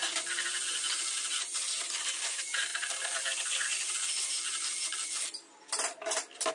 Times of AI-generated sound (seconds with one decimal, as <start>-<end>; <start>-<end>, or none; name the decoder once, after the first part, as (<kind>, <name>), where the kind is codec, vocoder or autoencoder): 0.0-6.5 (vocoder, BigVGAN v2)